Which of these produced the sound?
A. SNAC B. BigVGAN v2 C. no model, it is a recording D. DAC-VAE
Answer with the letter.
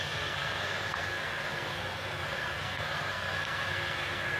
A